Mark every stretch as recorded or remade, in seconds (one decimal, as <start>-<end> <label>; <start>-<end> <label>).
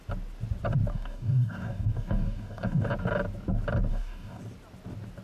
0.0-0.9 recorded; 0.9-2.9 remade; 2.9-3.9 recorded; 3.9-4.4 remade; 4.4-5.2 recorded